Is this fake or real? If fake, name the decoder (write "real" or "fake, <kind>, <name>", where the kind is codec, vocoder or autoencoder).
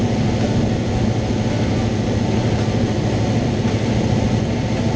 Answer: real